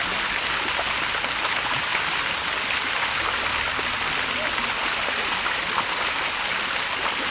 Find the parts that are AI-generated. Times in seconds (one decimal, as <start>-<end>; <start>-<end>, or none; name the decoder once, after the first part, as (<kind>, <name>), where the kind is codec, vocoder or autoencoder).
none